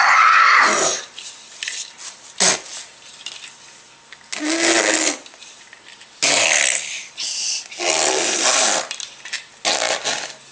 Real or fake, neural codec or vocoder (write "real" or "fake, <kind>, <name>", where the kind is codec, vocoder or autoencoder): real